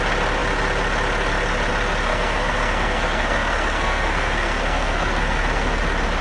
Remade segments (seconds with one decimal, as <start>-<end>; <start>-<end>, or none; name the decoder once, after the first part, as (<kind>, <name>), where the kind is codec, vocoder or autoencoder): 2.1-5.8 (codec, SNAC)